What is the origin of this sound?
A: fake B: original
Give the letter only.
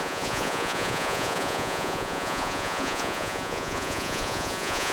A